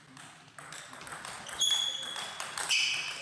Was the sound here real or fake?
real